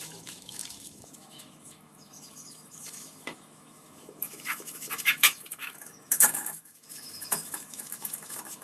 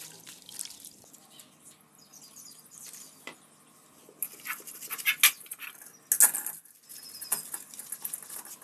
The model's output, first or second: first